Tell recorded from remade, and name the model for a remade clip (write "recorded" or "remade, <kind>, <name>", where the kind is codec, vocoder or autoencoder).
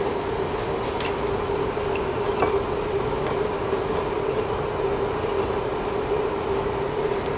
recorded